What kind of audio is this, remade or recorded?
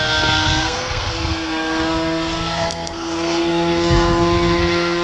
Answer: remade